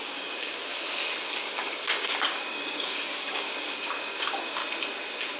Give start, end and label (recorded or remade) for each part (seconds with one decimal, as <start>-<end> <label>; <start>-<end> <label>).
0.0-0.7 remade; 0.7-1.4 recorded; 1.4-4.6 remade; 4.6-5.4 recorded